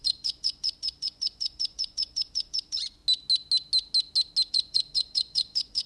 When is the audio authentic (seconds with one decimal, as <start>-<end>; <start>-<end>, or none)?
3.0-4.5